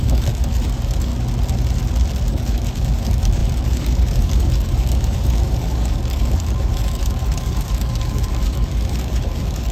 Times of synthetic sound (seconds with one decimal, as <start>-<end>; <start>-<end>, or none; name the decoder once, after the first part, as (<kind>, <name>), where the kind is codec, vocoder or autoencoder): 0.0-1.1 (codec, DAC); 2.3-9.7